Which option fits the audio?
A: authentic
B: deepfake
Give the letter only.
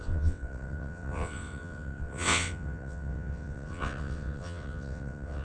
B